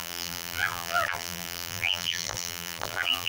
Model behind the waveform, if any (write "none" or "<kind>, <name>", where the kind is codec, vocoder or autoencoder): vocoder, BigVGAN v2